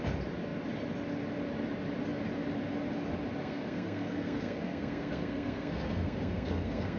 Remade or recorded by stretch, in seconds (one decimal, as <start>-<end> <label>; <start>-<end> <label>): 0.0-3.4 recorded; 3.4-7.0 remade